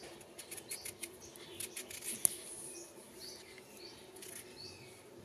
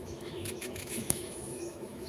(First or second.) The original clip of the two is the first